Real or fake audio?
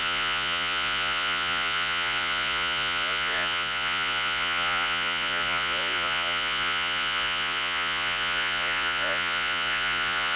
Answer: fake